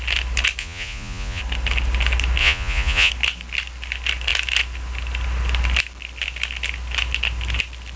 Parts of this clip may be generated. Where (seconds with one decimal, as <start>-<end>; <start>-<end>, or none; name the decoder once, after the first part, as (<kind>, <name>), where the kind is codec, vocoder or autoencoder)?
0.6-1.4 (vocoder, Vocos); 2.4-3.1